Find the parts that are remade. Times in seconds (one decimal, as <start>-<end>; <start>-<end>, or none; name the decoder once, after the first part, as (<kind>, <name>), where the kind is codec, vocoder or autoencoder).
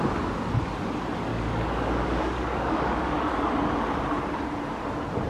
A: 1.3-3.5 (codec, DAC)